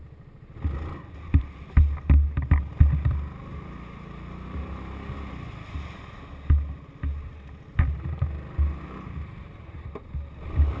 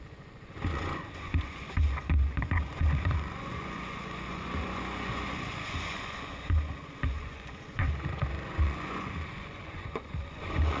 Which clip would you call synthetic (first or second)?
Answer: second